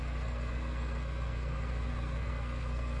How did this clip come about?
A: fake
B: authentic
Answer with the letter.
A